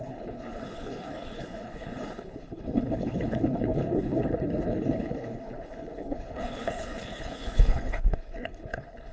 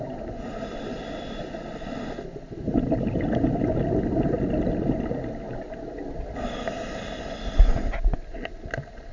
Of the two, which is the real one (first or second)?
second